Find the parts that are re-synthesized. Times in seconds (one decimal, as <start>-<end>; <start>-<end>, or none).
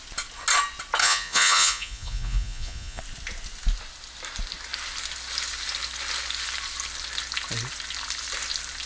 1.0-3.0